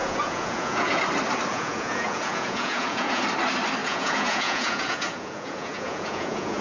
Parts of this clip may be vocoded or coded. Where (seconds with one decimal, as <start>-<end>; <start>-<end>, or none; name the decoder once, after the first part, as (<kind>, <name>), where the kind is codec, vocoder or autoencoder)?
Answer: 0.0-1.0 (vocoder, Vocos); 1.5-3.2; 3.8-6.6